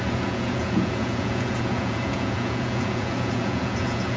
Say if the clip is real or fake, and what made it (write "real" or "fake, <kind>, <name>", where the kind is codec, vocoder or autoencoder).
fake, vocoder, Vocos